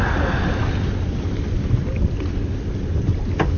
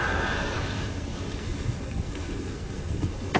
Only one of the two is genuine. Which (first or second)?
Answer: first